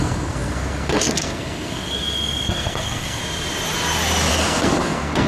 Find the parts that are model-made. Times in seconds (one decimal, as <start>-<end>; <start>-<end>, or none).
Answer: 0.0-3.2; 4.3-5.3